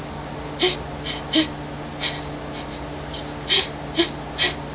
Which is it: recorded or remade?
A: recorded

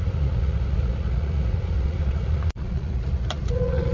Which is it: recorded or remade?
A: remade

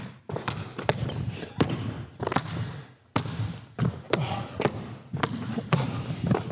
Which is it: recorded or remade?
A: recorded